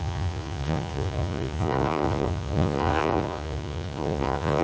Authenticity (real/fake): fake